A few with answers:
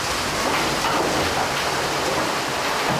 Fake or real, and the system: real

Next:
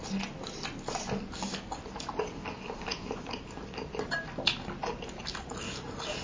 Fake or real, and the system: real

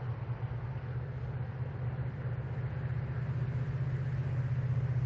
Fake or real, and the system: real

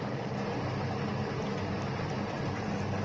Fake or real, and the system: real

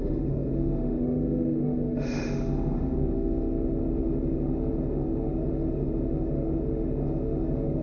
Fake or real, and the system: fake, autoencoder, DAC-VAE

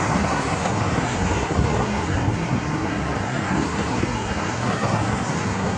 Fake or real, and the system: fake, codec, SNAC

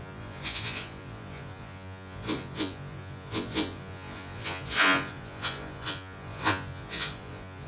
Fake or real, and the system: fake, vocoder, Vocos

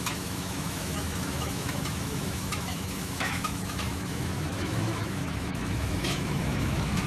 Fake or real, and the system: fake, autoencoder, DAC-VAE